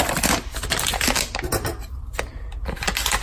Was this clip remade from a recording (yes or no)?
no